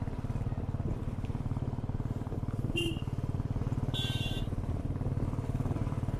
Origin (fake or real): fake